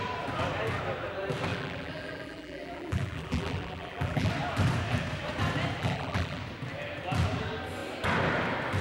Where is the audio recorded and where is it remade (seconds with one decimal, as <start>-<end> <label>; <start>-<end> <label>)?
0.0-1.5 recorded; 1.5-4.3 remade; 4.3-5.8 recorded; 5.8-6.4 remade; 6.4-8.8 recorded